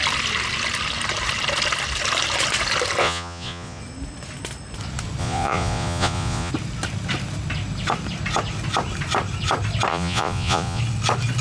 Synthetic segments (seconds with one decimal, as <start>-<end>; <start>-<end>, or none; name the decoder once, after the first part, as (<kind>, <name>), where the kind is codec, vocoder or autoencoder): 3.0-3.8 (vocoder, Vocos); 5.2-6.5; 9.9-10.8